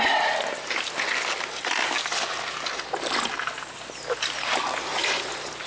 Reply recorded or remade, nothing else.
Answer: recorded